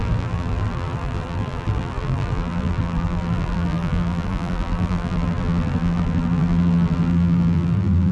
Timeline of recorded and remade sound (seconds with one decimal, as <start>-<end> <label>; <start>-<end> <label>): 0.0-8.1 remade

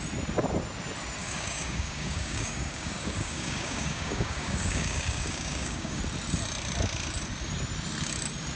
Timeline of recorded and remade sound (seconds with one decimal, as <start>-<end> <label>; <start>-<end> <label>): 0.0-1.2 recorded; 1.2-6.0 remade; 6.0-8.6 recorded